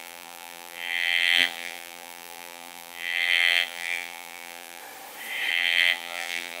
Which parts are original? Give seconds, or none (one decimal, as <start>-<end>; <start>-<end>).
4.8-5.5